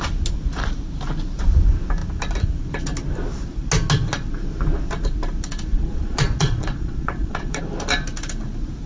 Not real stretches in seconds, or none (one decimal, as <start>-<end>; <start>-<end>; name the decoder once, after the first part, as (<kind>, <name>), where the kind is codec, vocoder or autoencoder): 5.7-7.6 (vocoder, Vocos)